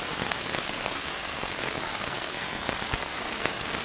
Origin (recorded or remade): remade